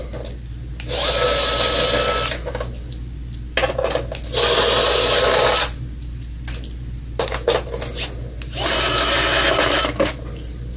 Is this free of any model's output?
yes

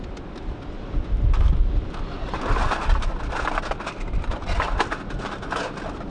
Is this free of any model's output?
yes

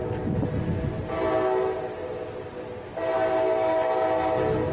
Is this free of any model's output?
yes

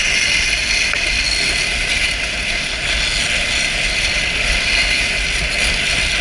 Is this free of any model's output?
yes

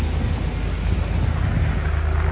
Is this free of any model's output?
yes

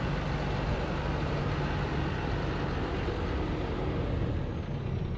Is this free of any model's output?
yes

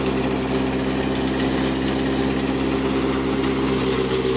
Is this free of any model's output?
yes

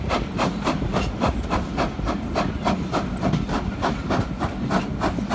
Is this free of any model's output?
yes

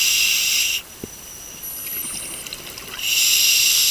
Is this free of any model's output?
yes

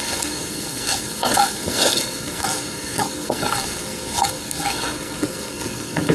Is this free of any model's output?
no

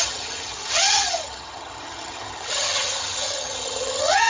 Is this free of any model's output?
no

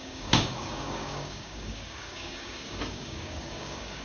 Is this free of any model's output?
no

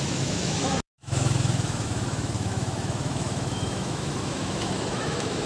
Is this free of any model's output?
no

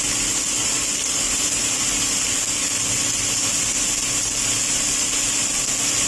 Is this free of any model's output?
yes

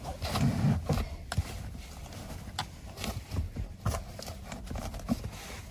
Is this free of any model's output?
yes